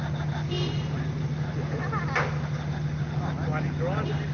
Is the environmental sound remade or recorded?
recorded